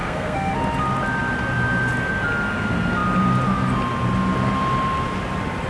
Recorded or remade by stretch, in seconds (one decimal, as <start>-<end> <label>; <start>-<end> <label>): 0.0-0.5 remade; 0.5-5.7 recorded